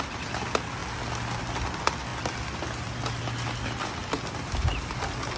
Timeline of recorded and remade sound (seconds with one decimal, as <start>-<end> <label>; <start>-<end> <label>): 0.0-5.4 recorded